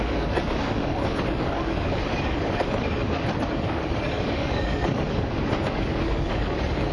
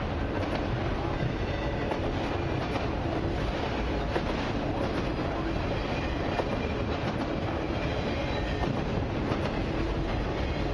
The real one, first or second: second